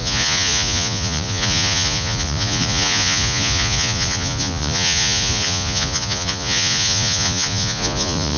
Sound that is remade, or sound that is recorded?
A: remade